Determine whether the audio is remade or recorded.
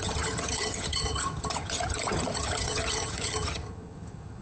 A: remade